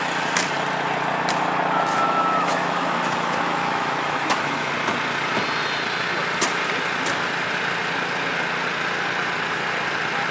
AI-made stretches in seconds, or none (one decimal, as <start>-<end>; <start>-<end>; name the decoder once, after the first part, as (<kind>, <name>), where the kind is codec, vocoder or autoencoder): 1.9-4.7 (autoencoder, DAC-VAE)